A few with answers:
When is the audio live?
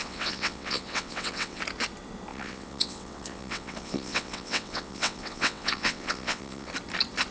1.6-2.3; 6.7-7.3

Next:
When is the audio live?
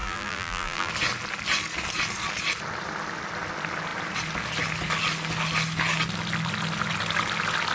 0.9-7.7